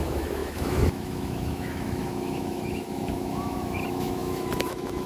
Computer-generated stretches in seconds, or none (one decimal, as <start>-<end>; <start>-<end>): 0.0-5.1